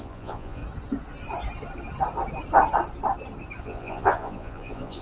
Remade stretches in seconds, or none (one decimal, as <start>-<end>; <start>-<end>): 0.0-0.6; 3.6-5.0